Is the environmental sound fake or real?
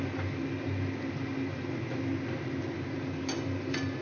real